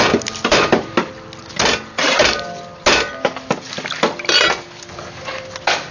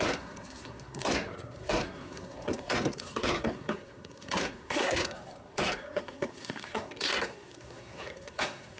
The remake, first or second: second